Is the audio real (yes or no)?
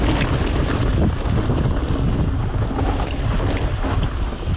yes